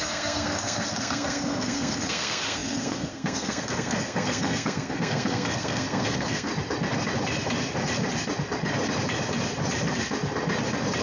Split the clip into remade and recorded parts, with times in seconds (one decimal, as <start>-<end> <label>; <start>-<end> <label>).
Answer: 0.0-6.5 remade; 6.5-11.0 recorded